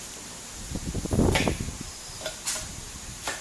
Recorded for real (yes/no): no